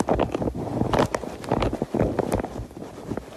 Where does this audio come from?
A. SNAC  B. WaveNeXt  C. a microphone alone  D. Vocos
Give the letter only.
C